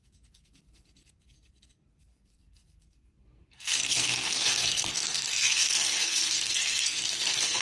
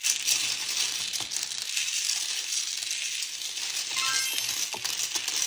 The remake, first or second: first